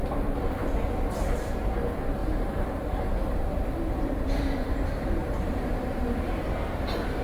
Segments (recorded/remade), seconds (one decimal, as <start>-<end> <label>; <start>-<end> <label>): 0.0-1.4 remade; 1.4-2.2 recorded; 2.2-6.5 remade; 6.5-7.2 recorded